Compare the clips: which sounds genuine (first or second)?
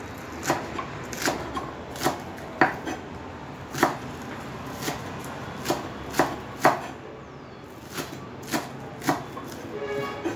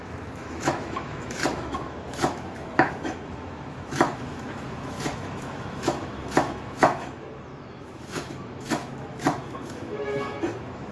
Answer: first